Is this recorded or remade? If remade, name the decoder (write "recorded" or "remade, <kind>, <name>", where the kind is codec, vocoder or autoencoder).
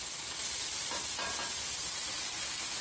recorded